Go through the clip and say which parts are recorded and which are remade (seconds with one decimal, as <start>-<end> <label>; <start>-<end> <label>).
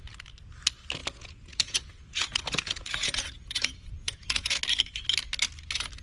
0.0-1.0 recorded; 1.0-4.6 remade; 4.6-6.0 recorded